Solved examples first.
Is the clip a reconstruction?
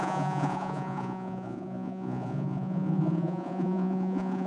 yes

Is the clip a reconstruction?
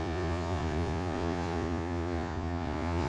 yes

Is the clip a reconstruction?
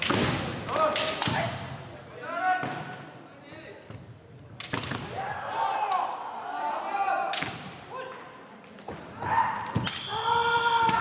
no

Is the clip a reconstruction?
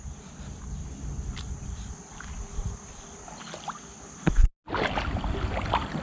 no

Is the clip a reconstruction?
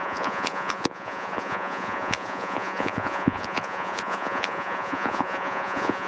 yes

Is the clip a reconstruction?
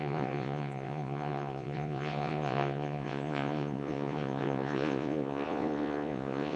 yes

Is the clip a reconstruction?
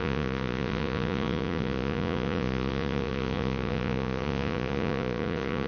yes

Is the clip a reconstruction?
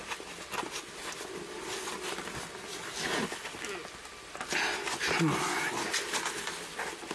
no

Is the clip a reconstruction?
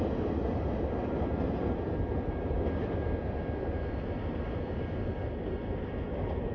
no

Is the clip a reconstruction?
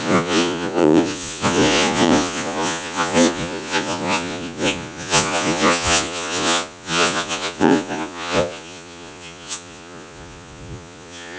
yes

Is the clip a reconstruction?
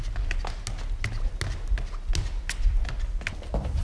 no